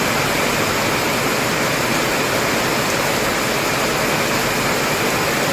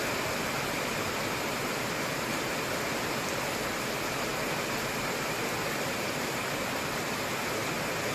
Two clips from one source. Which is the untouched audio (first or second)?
first